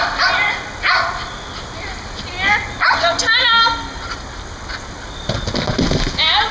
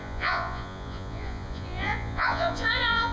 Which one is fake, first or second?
second